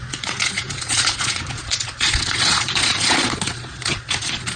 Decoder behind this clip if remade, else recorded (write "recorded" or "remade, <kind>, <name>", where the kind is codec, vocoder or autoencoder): remade, vocoder, Vocos